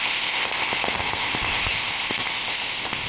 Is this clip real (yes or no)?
no